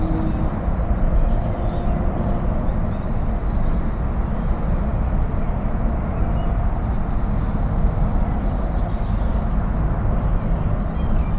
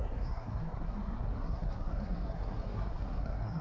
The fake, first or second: second